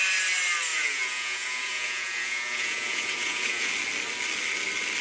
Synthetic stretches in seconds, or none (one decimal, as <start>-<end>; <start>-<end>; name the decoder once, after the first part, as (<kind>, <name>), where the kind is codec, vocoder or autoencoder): 0.7-3.7 (vocoder, Vocos)